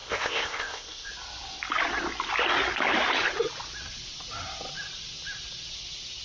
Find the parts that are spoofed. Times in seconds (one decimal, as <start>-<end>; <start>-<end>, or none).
0.0-1.1